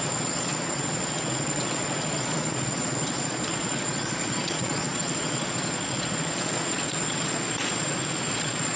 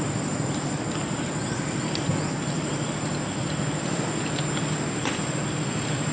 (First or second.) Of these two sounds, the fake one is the first